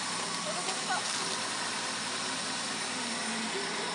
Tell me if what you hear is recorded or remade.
recorded